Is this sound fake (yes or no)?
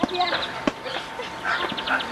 no